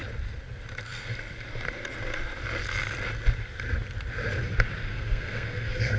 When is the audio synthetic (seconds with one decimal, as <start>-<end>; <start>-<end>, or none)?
4.9-6.0